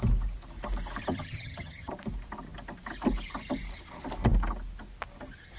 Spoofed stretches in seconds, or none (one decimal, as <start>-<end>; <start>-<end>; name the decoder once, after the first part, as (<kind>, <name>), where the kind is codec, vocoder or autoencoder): 1.1-1.9 (vocoder, HiFi-GAN)